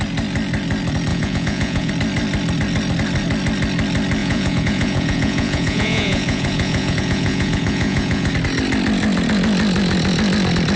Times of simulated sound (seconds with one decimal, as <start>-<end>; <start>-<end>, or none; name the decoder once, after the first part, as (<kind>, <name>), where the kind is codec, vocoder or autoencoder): 1.1-1.9 (vocoder, Vocos); 4.2-8.3